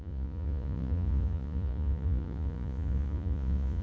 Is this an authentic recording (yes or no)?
no